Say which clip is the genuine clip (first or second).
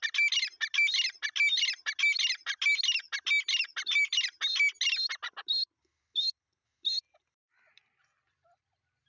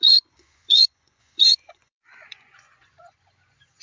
first